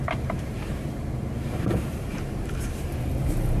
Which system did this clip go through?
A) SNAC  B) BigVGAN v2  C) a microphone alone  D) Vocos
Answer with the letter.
B